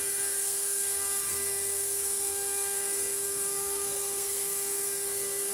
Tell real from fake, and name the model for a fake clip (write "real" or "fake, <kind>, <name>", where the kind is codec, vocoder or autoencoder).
fake, codec, SNAC